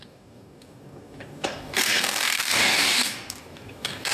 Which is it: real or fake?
fake